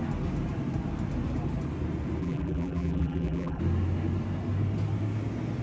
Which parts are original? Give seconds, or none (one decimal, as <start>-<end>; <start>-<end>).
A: 0.0-2.2; 3.6-5.6